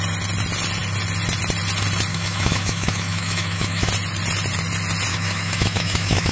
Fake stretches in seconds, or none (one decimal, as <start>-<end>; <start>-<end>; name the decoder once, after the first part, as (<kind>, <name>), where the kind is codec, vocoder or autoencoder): 2.1-3.9 (autoencoder, DAC-VAE); 5.1-6.3

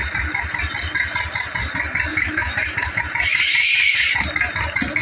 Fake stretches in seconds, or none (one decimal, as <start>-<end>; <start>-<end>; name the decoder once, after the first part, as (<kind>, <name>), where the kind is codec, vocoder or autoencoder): 2.1-3.0 (autoencoder, DAC-VAE)

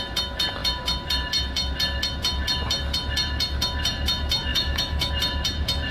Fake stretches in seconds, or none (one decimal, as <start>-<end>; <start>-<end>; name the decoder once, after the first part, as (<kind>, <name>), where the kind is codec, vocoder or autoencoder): 4.5-5.1 (autoencoder, DAC-VAE)

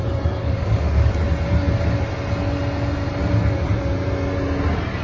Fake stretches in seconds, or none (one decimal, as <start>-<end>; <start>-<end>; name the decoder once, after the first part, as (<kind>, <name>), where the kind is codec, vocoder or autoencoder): 0.4-1.1 (autoencoder, DAC-VAE)

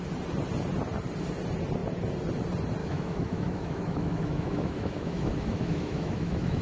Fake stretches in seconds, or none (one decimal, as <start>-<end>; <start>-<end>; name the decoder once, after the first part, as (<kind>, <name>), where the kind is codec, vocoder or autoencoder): 2.8-6.6 (autoencoder, DAC-VAE)

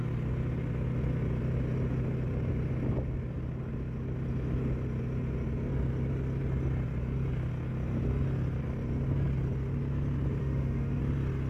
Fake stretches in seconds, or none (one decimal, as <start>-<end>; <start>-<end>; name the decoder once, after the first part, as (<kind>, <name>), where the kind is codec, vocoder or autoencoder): 10.4-11.0 (autoencoder, DAC-VAE)

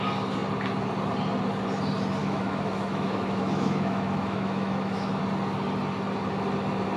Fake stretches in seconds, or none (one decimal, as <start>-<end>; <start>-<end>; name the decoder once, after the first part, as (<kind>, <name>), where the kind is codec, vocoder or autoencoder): 2.2-5.2 (autoencoder, DAC-VAE)